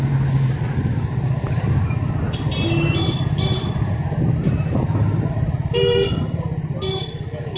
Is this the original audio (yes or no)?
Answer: yes